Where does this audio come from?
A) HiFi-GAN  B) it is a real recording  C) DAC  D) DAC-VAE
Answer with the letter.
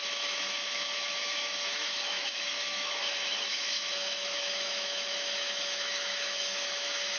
D